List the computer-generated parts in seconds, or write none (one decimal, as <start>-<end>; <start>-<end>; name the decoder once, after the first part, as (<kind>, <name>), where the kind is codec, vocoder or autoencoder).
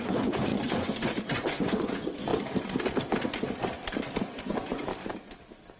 0.0-2.3 (vocoder, Vocos); 4.4-4.9